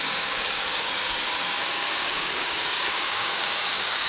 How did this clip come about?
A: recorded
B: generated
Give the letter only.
B